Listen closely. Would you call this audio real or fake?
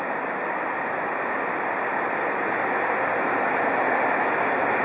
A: real